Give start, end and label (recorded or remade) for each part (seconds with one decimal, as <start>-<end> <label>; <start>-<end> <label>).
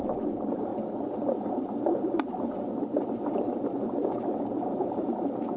0.0-5.6 recorded